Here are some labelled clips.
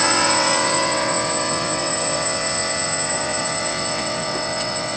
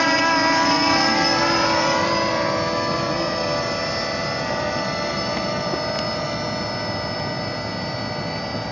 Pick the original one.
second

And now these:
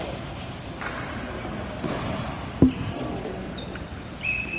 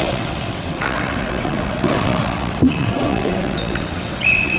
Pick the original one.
first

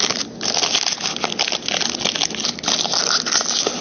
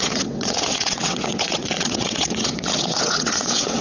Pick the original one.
first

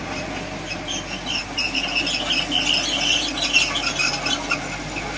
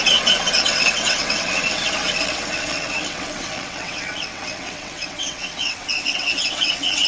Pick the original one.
first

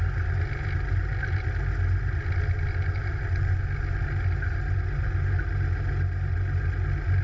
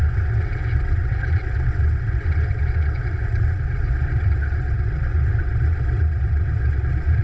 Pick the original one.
first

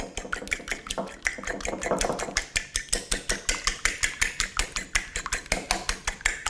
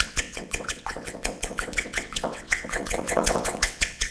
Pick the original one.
first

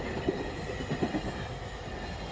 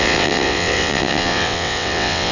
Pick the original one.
first